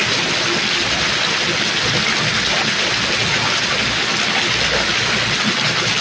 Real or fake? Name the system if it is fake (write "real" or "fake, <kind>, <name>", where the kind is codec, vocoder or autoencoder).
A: real